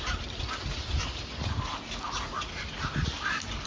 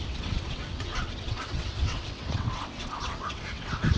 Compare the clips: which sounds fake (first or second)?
second